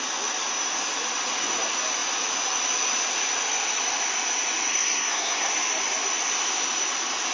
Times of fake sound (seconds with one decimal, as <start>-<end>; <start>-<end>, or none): 4.7-5.5